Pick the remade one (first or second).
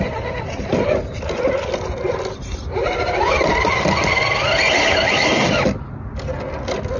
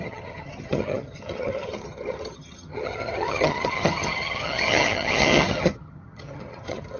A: second